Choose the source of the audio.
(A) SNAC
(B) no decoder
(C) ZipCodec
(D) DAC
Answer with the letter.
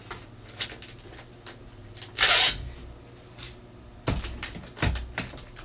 B